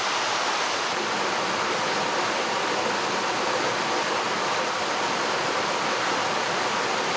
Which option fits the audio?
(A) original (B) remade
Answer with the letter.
A